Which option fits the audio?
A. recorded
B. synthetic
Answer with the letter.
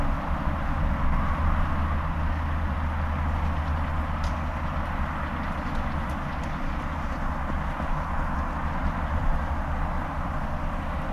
A